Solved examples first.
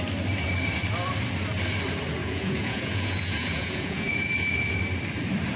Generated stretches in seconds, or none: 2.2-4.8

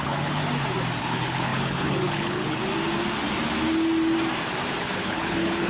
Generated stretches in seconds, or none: 0.0-0.4; 1.0-2.6; 4.8-5.7

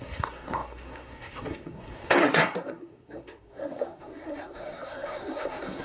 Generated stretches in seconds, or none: 0.0-5.8

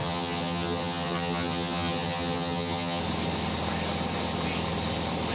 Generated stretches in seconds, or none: 0.0-3.0

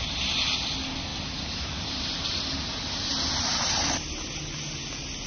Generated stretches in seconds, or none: 1.1-4.0

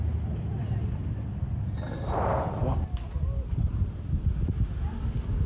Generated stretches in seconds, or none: none

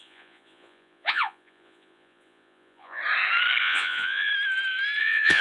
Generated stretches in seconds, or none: 0.0-3.0; 3.6-4.3; 5.0-5.4